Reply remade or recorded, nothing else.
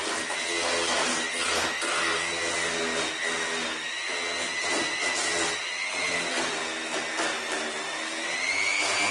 recorded